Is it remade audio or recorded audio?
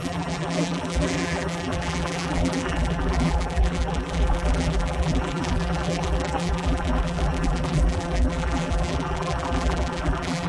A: remade